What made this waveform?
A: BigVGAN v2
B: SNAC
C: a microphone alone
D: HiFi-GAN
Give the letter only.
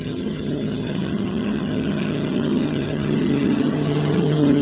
D